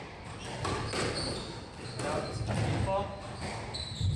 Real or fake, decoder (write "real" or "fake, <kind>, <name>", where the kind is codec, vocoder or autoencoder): real